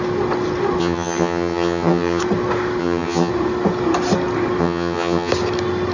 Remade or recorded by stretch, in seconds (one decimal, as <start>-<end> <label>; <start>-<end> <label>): 0.0-0.8 recorded; 0.8-2.2 remade; 2.2-2.8 recorded; 2.8-3.3 remade; 3.3-4.6 recorded; 4.6-5.3 remade; 5.3-5.9 recorded